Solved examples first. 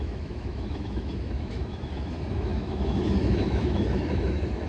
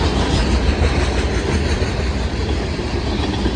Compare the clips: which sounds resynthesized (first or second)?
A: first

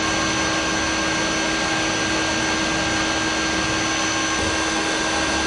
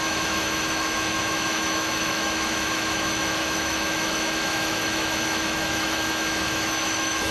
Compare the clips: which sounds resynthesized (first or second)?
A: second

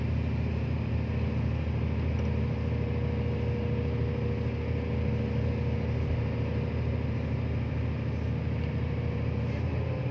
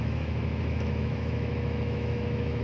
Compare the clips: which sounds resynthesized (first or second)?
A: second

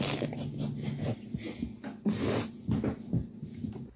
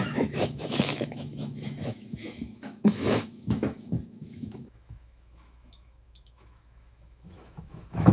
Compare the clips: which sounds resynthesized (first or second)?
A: second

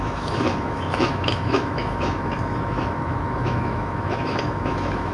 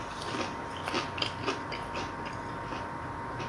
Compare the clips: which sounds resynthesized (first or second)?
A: first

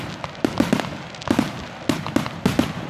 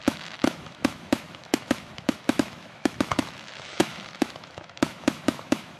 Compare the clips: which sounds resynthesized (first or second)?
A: second